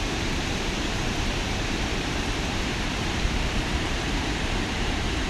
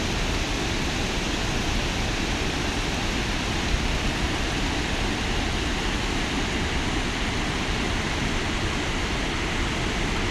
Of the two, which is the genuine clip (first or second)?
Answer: second